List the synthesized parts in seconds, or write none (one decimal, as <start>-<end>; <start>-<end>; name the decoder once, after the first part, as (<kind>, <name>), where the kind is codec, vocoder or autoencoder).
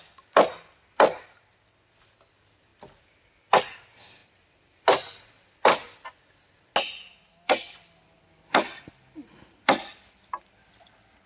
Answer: none